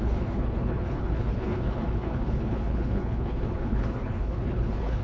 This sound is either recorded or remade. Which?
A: remade